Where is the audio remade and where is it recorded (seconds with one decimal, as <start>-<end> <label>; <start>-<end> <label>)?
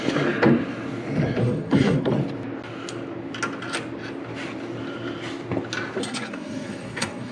0.0-1.4 recorded; 1.4-2.1 remade; 2.1-6.0 recorded; 6.0-7.3 remade